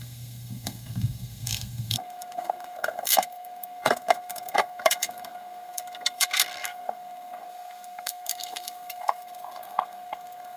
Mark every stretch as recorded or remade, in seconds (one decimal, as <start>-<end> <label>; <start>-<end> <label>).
0.0-10.6 remade